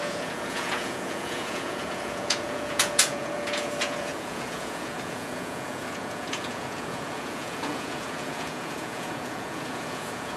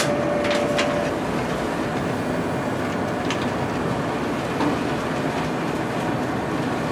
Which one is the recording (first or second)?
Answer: second